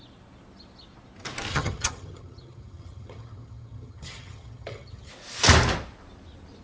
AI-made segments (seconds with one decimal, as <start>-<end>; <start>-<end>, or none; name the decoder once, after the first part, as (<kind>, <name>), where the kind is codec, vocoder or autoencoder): 1.5-5.1 (vocoder, HiFi-GAN)